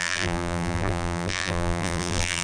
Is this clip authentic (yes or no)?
no